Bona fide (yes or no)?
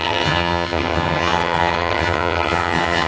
no